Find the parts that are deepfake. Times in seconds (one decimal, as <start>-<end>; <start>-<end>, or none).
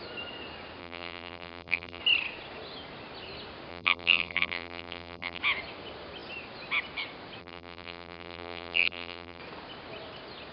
0.8-2.0; 3.7-5.4; 7.4-9.4